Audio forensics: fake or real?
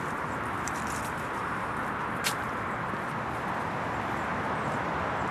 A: real